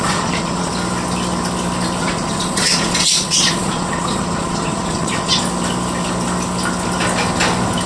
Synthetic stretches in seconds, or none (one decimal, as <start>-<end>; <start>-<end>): 0.0-0.7; 2.0-5.4